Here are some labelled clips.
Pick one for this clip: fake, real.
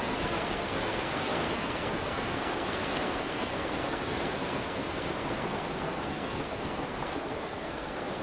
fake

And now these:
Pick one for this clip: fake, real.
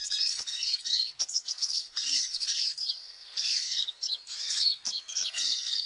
fake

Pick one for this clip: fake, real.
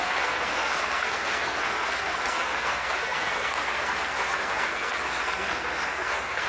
fake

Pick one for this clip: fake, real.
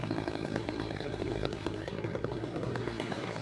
fake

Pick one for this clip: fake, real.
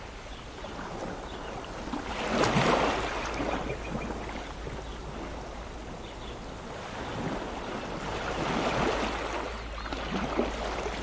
real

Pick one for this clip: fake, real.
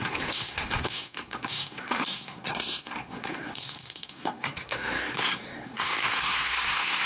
fake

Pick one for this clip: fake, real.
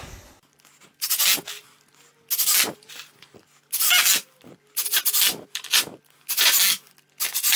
real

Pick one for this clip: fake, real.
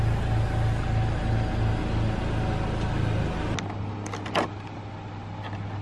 real